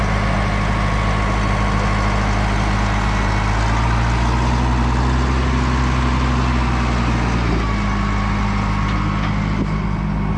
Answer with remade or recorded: recorded